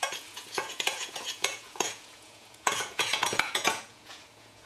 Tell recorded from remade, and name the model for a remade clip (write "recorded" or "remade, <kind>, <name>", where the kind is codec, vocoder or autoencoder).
remade, vocoder, Vocos